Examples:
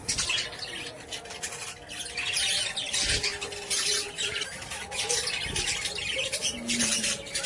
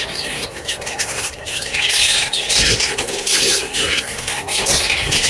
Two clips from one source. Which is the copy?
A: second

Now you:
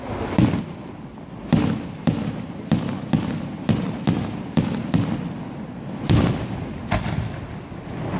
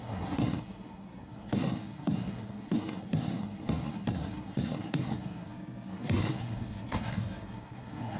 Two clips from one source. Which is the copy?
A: second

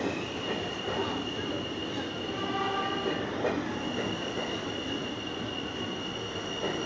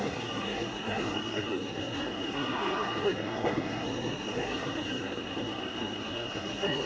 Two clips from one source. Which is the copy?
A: second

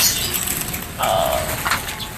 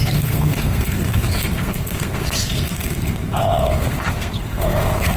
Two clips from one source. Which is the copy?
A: second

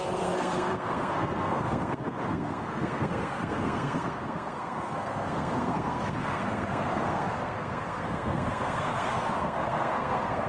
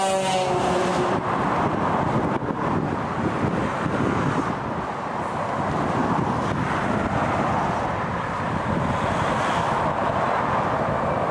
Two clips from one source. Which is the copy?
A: first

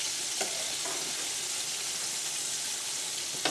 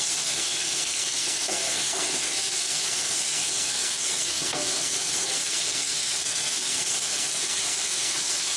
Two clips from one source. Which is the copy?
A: second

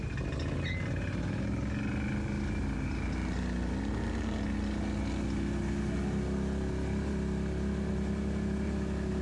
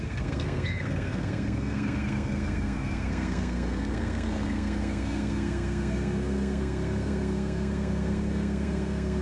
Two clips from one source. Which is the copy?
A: second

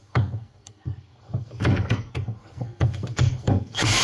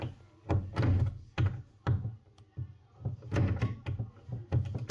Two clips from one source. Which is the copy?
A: first